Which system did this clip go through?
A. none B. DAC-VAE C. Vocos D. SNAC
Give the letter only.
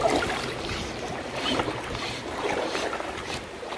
A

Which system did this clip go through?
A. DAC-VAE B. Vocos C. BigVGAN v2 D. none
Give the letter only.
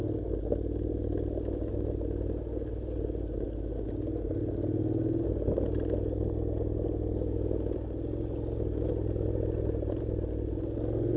D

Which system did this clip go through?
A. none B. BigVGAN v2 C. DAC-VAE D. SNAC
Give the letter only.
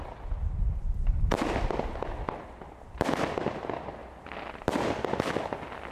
A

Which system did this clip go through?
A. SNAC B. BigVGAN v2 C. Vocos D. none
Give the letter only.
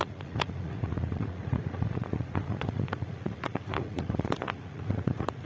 C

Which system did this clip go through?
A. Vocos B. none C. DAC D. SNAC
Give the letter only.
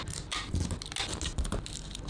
B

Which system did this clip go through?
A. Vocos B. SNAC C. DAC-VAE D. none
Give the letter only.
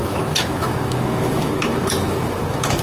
C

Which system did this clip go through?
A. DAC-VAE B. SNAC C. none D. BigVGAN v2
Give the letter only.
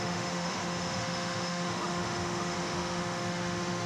A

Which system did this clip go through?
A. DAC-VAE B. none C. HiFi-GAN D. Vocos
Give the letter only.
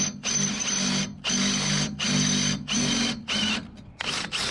B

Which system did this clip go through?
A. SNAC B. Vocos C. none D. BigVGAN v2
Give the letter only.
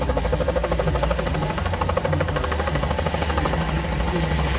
C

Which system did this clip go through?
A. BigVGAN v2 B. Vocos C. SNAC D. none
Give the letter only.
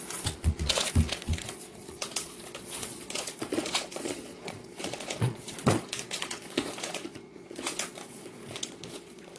B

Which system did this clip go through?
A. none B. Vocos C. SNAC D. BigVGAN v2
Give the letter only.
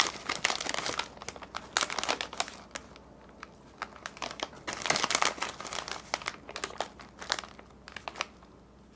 A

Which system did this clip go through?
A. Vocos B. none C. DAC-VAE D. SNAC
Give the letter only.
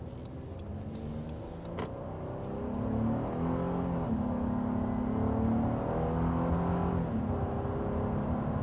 B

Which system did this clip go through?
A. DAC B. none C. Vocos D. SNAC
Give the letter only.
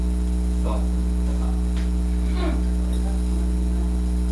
B